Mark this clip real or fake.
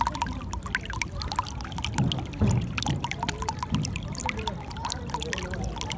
real